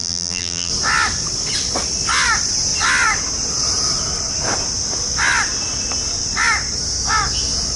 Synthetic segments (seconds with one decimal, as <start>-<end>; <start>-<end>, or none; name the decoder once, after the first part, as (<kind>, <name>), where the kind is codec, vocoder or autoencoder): 0.0-0.7 (vocoder, BigVGAN v2)